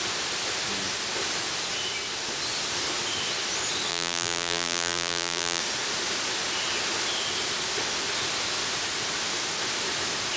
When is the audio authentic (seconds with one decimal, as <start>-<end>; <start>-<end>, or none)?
0.0-3.9; 5.6-10.4